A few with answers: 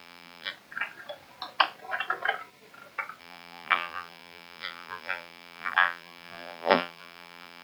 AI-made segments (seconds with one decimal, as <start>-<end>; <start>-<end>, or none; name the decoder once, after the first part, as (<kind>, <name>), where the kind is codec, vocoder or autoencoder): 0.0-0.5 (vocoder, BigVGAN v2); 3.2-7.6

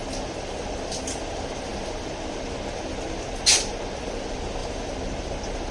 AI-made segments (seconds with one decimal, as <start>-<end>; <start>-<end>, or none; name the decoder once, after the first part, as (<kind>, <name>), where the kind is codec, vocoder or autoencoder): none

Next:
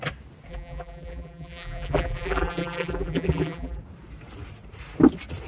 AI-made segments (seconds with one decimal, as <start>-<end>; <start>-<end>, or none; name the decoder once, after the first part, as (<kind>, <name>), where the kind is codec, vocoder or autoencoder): 0.5-3.8 (vocoder, BigVGAN v2)

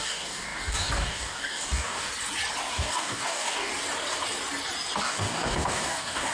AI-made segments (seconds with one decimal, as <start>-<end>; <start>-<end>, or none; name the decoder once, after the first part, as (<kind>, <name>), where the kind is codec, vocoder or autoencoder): 0.0-2.1 (codec, DAC); 2.7-3.7; 5.0-6.3

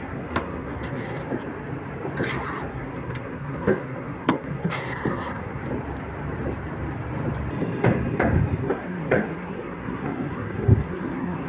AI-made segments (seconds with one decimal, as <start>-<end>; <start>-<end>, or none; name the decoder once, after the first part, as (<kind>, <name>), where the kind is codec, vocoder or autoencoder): 0.0-1.2 (codec, SNAC); 2.7-5.6; 8.6-11.5

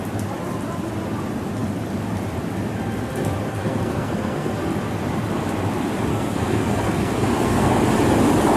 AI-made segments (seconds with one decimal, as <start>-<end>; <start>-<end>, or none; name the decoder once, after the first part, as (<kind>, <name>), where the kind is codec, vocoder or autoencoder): 3.5-4.5 (codec, SNAC); 6.1-7.7

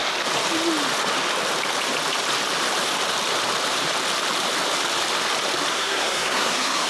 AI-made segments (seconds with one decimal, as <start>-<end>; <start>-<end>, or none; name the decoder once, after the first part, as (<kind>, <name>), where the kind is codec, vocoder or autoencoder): 5.7-6.9 (codec, SNAC)